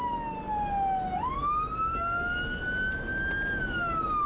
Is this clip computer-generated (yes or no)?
no